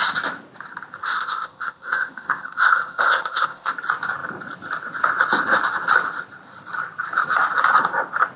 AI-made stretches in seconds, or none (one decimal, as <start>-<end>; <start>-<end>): 1.0-3.7